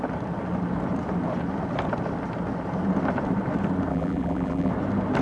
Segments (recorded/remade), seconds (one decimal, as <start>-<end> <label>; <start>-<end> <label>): 0.0-3.9 recorded; 3.9-4.7 remade; 4.7-5.2 recorded